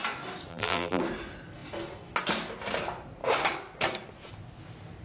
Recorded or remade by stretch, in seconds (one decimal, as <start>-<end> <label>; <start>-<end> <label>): 0.0-0.5 recorded; 0.5-1.0 remade; 1.0-5.0 recorded